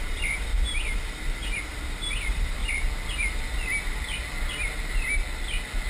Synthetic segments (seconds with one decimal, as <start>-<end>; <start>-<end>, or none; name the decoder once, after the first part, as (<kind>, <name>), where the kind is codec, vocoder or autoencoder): 0.0-0.5 (vocoder, BigVGAN v2); 1.7-2.6

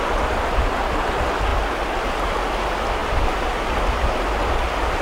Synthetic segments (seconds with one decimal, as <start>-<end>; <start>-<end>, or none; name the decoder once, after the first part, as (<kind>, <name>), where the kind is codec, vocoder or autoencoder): none

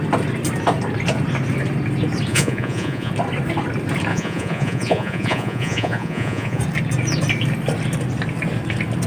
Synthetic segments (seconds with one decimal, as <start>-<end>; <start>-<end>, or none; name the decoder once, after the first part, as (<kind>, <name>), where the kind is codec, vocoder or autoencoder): 2.3-3.1 (vocoder, Vocos); 4.1-6.6

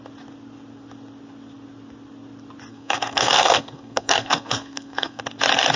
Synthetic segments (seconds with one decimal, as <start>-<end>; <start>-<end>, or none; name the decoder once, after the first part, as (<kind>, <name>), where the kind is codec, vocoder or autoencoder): 2.7-5.2 (codec, SNAC)

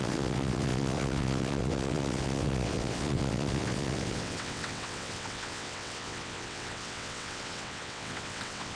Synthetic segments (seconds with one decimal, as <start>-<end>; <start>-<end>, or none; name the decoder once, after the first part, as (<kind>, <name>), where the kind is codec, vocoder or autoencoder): 0.0-8.8 (vocoder, WaveNeXt)

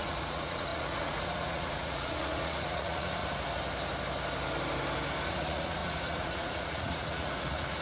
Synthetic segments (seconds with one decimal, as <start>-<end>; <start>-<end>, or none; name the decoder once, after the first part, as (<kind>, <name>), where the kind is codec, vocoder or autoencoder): 0.0-3.2 (vocoder, Vocos); 5.3-7.8

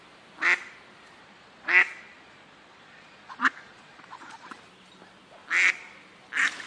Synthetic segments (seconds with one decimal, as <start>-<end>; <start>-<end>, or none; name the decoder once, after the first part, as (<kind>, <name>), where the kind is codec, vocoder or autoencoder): 1.2-4.5 (vocoder, Vocos)